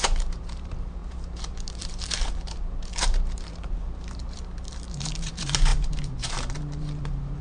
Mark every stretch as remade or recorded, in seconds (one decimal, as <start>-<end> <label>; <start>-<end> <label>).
0.0-7.4 remade